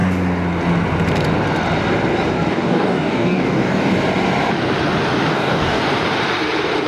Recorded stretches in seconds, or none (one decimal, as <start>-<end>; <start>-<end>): 0.0-2.5; 3.9-5.3; 5.8-6.9